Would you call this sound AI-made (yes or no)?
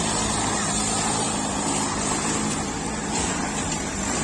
yes